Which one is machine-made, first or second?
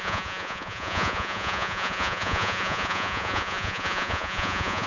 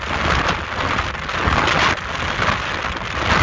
first